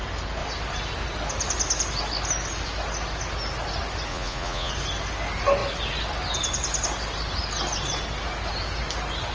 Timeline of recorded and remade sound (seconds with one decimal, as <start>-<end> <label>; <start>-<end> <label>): 0.0-4.1 recorded; 4.1-4.7 remade; 4.7-9.3 recorded